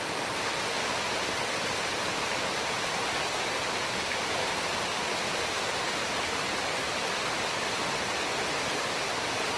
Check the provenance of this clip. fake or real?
real